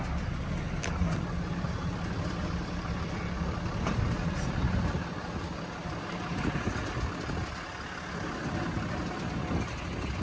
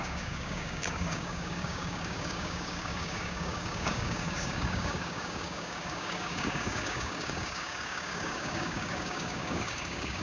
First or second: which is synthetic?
second